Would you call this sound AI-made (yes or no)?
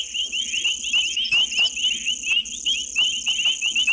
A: no